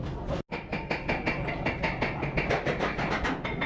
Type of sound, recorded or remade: recorded